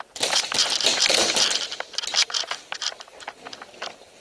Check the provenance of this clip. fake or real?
fake